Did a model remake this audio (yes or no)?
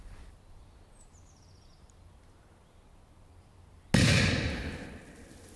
no